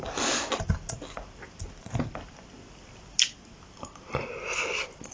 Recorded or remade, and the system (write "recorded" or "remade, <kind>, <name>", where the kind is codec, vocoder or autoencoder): recorded